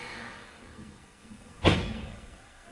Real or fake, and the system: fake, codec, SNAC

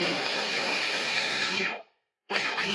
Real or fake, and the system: fake, codec, SNAC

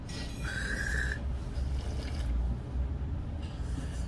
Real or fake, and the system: real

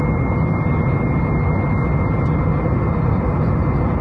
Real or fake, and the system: real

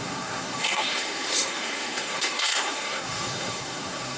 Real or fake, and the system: fake, codec, SNAC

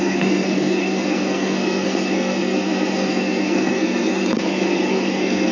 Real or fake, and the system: fake, codec, SNAC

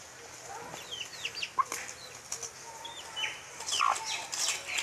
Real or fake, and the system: real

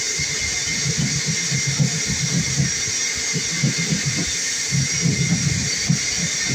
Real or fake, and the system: real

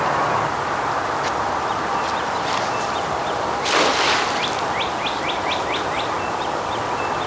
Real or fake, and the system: real